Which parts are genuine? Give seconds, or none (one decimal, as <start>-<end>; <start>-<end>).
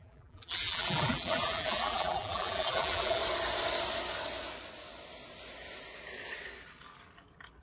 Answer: 3.2-7.6